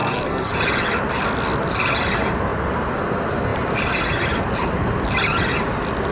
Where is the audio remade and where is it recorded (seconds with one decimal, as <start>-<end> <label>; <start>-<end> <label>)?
0.0-0.5 remade; 0.5-6.1 recorded